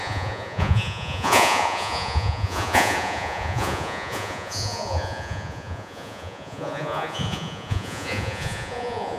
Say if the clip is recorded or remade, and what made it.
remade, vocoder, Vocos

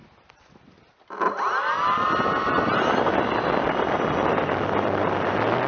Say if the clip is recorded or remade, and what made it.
recorded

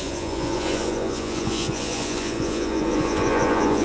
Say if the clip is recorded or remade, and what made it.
remade, vocoder, Vocos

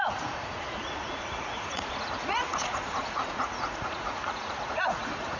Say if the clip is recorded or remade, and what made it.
remade, vocoder, Vocos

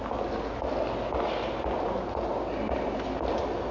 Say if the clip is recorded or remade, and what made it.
recorded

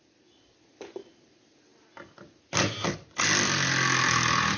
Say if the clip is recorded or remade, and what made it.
recorded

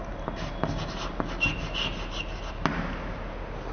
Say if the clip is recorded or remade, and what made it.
recorded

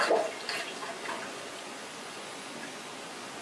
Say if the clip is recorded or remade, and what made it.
remade, vocoder, Vocos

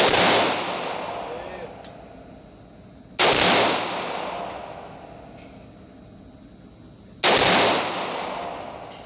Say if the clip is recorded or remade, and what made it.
recorded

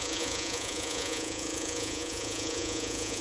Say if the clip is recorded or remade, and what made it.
remade, vocoder, Vocos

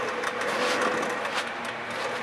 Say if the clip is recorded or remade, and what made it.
recorded